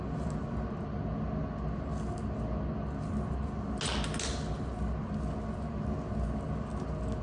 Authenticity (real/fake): real